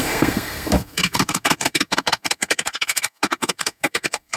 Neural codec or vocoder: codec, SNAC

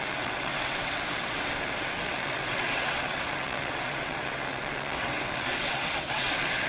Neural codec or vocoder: vocoder, WaveNeXt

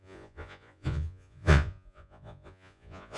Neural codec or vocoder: vocoder, Vocos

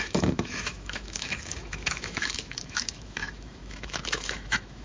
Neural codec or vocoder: autoencoder, DAC-VAE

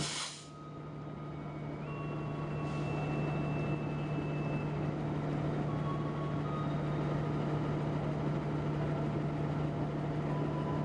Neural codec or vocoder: none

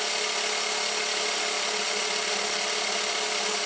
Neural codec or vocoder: none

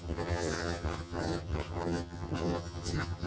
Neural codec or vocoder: vocoder, HiFi-GAN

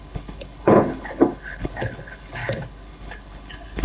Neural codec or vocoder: codec, HILCodec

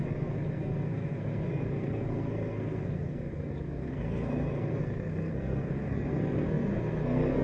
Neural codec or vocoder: codec, SNAC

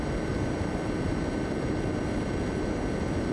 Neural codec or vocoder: none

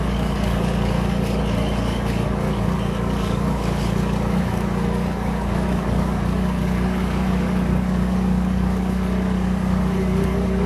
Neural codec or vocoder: codec, DAC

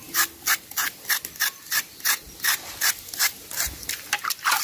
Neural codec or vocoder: none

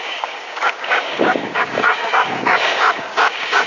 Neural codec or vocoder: codec, DAC